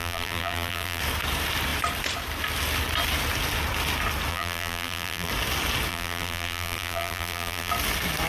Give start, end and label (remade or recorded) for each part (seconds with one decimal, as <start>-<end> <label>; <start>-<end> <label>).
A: 0.0-1.0 remade; 1.0-4.3 recorded; 4.3-5.3 remade; 5.3-5.9 recorded; 5.9-7.7 remade; 7.7-8.3 recorded